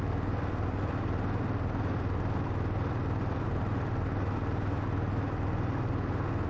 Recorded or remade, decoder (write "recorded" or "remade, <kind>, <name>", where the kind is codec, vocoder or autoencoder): recorded